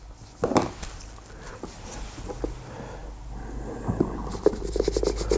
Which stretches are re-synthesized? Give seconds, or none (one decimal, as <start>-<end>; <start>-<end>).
none